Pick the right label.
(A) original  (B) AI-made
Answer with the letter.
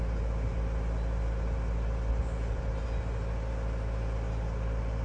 A